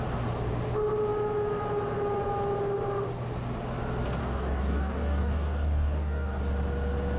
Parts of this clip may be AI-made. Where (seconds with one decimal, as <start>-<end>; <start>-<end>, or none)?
4.2-6.4